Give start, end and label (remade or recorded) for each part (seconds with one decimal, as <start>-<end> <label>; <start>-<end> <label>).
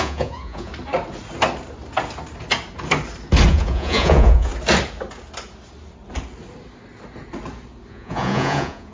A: 0.0-0.7 remade; 0.7-3.5 recorded; 3.5-4.5 remade; 4.5-7.9 recorded; 7.9-8.9 remade